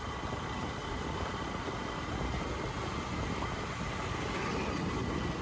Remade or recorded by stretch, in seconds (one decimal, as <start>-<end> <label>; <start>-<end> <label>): 0.0-5.4 recorded